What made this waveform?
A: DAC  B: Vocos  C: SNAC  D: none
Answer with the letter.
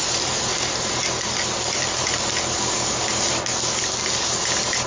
D